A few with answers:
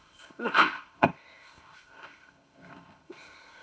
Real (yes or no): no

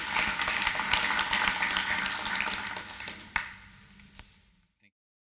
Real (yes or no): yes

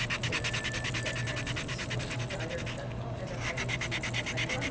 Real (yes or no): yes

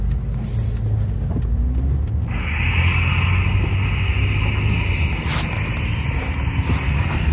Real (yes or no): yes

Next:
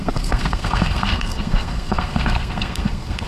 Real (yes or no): no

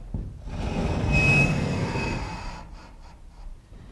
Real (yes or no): yes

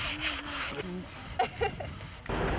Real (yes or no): yes